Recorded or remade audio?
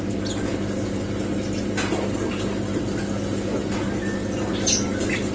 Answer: recorded